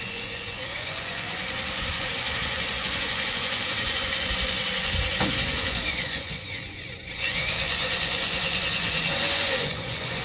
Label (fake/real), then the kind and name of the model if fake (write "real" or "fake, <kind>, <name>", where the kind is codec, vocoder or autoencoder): fake, vocoder, Vocos